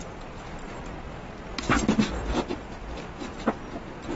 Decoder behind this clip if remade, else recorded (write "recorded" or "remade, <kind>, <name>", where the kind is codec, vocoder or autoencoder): recorded